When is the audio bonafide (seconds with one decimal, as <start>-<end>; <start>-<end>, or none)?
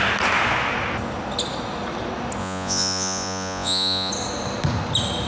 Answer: 0.0-2.4; 4.1-5.3